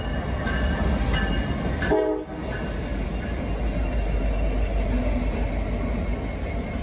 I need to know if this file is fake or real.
real